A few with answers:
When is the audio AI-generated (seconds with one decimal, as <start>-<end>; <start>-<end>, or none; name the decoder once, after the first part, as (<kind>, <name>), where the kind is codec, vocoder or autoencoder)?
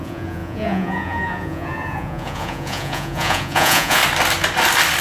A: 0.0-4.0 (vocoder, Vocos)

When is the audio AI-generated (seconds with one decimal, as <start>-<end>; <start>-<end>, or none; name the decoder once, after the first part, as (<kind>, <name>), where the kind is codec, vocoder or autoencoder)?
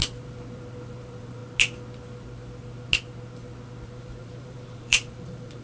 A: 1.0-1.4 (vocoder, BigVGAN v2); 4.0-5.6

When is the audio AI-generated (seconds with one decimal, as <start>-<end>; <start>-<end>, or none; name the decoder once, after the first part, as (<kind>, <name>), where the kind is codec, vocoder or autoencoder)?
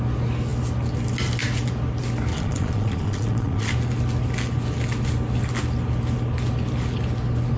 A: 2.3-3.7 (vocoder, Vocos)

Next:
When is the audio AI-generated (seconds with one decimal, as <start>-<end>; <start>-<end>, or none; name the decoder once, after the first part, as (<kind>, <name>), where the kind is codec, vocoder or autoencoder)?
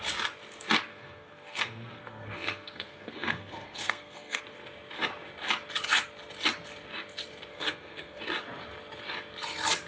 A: 0.9-4.4 (codec, SNAC); 7.5-8.2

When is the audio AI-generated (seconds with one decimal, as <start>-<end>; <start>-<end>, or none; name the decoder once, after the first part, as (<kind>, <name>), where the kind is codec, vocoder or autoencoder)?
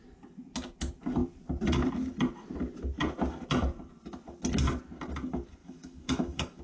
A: 5.6-6.6 (autoencoder, DAC-VAE)